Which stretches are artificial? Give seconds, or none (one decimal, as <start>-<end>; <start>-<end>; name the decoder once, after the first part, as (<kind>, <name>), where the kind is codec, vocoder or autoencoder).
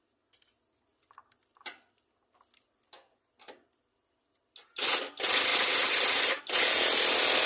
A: 5.5-6.4 (vocoder, BigVGAN v2)